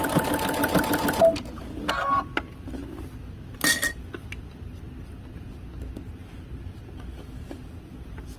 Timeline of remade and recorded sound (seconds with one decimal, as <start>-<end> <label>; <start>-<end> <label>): 0.0-8.4 recorded